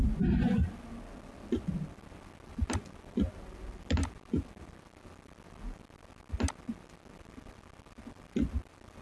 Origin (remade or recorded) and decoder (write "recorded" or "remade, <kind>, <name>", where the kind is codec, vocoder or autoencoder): recorded